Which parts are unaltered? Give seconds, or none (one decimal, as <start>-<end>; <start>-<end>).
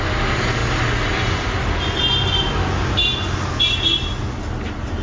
0.0-5.0